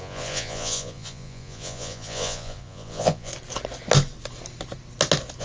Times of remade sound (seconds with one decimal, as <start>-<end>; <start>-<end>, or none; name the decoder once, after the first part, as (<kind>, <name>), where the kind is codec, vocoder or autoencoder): 0.0-3.3 (vocoder, Vocos)